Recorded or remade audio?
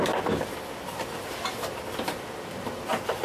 recorded